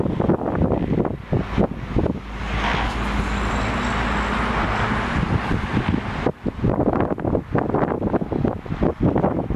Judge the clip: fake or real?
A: real